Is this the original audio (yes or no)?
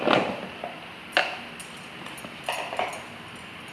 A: yes